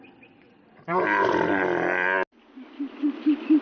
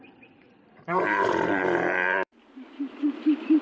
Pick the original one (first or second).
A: first